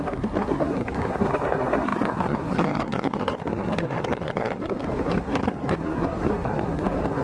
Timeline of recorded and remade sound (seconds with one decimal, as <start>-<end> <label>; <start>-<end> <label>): 0.0-7.2 remade